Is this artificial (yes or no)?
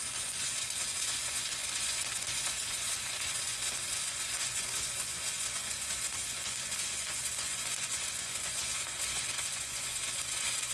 yes